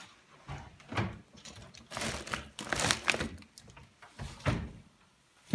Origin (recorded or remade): recorded